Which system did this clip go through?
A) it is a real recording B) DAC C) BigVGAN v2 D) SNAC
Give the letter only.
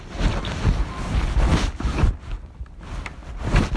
A